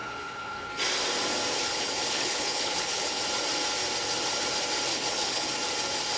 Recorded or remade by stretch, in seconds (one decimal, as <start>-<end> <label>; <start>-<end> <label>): 0.0-0.7 remade; 0.7-1.5 recorded; 1.5-3.2 remade; 3.2-4.9 recorded; 4.9-5.5 remade; 5.5-6.2 recorded